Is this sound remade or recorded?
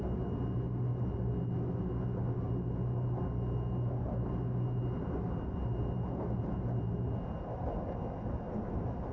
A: recorded